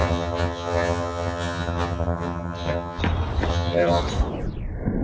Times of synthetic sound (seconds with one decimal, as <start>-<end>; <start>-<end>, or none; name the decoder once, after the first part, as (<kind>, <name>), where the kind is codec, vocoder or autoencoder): 0.0-3.0 (vocoder, HiFi-GAN); 3.5-4.0